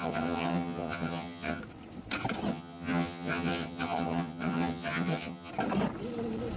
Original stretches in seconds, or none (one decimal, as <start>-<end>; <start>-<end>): 1.6-2.5; 5.5-6.6